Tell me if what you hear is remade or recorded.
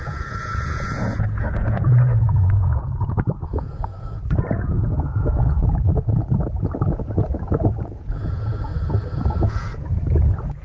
remade